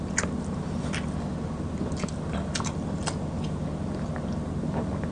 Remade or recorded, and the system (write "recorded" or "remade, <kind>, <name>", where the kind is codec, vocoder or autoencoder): recorded